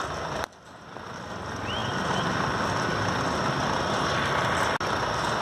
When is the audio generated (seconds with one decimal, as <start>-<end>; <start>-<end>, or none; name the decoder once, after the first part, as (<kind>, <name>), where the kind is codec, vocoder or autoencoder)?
none

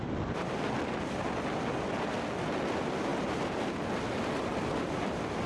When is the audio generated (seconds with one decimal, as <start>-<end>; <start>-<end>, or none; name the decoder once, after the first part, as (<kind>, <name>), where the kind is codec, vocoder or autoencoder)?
none

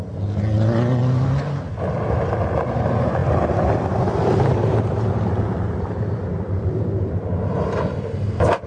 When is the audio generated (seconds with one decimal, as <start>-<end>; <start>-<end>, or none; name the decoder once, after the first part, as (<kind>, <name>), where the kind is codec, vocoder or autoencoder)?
none

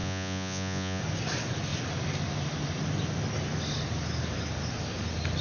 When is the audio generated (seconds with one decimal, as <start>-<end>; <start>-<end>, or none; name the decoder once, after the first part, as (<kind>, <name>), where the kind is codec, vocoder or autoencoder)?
0.0-1.0 (vocoder, Vocos)